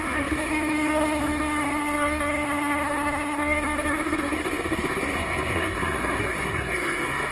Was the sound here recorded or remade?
remade